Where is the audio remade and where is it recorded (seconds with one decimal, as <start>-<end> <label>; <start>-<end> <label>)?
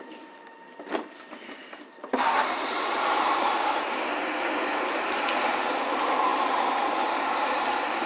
0.0-8.1 remade